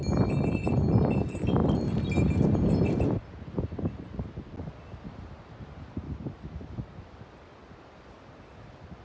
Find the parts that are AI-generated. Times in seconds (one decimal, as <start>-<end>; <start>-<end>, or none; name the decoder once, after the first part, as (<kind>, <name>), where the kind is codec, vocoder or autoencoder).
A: none